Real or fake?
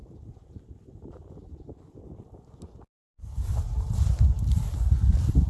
real